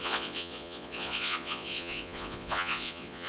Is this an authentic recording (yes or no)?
no